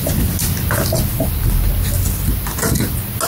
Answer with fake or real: real